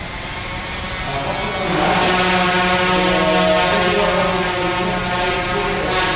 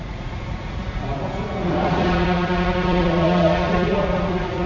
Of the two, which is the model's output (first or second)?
second